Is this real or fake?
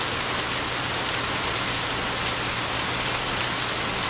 real